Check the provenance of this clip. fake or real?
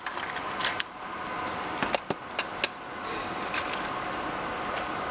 real